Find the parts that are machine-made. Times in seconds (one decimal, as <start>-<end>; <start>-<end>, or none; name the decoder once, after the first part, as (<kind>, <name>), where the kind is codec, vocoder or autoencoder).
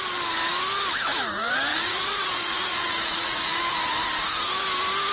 1.7-3.6 (vocoder, Vocos)